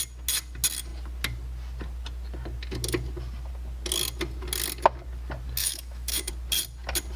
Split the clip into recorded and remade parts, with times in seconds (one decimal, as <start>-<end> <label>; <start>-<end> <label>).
0.0-5.6 recorded; 5.6-6.3 remade; 6.3-7.2 recorded